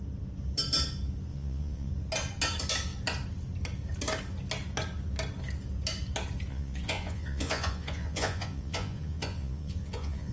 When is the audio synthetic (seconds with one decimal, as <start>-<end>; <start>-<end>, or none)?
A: 1.3-1.9; 6.5-10.3